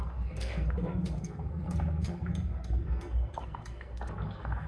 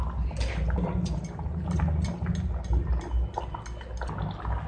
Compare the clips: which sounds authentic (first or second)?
second